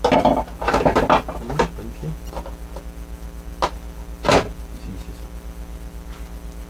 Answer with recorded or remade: recorded